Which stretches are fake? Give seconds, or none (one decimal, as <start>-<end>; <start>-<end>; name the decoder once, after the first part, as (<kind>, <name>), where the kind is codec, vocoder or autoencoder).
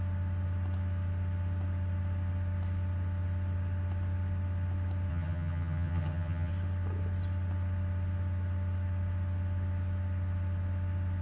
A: 5.1-6.5 (vocoder, HiFi-GAN)